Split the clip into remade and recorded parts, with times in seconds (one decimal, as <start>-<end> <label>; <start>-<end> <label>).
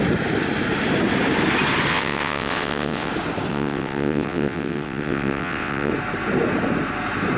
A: 0.0-1.9 recorded; 1.9-3.1 remade; 3.1-3.5 recorded; 3.5-5.9 remade; 5.9-7.4 recorded